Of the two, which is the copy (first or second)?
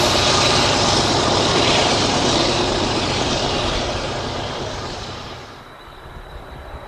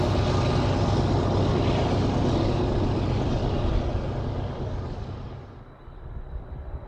first